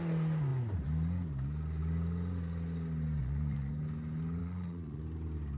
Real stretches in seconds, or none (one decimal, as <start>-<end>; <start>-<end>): 0.0-3.2; 3.7-4.4; 5.0-5.6